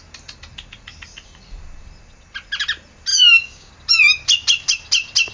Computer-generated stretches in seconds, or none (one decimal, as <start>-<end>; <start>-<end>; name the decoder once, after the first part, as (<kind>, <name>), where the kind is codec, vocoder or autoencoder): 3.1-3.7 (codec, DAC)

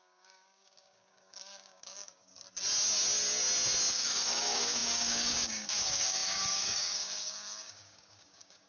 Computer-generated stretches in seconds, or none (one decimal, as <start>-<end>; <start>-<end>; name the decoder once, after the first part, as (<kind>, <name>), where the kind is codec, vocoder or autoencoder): 0.0-2.3 (codec, DAC); 3.9-8.7

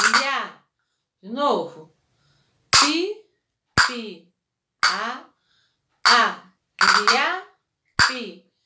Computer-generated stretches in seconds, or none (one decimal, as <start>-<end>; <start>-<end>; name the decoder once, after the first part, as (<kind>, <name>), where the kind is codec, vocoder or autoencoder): none

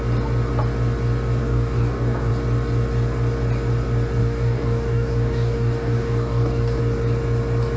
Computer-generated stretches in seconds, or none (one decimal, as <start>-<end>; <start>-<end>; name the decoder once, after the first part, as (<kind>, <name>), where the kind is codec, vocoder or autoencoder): 1.4-2.3 (codec, DAC); 4.2-6.8